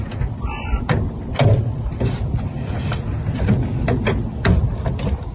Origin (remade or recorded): recorded